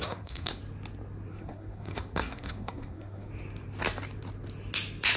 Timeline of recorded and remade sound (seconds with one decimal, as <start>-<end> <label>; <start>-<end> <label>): 0.0-0.6 remade; 0.6-1.3 recorded; 1.3-3.3 remade; 3.3-5.2 recorded